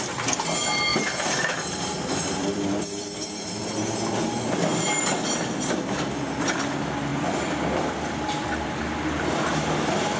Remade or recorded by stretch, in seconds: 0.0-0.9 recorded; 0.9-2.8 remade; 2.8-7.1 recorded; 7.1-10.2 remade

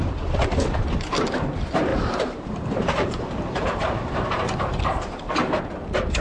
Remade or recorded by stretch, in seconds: 0.0-1.9 recorded; 1.9-5.6 remade; 5.6-6.2 recorded

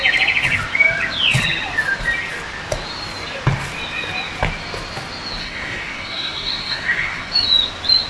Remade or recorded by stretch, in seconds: 0.0-5.4 recorded; 5.4-7.3 remade; 7.3-8.1 recorded

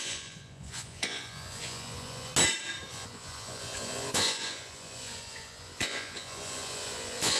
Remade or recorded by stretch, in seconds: 0.0-2.3 remade; 2.3-2.9 recorded; 2.9-7.4 remade

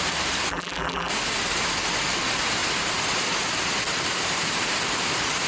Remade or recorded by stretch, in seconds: 0.0-0.5 recorded; 0.5-1.1 remade; 1.1-5.5 recorded

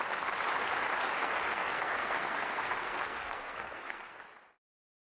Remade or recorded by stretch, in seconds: 0.0-1.2 recorded; 1.2-4.2 remade; 4.2-5.0 recorded

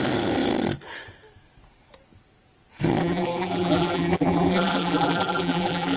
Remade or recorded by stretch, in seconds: 0.0-3.0 recorded; 3.0-6.0 remade